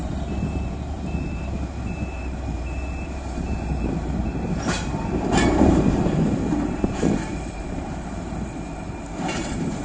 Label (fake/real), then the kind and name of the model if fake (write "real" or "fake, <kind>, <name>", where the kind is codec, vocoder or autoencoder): fake, vocoder, BigVGAN v2